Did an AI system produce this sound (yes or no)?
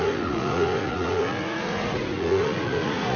yes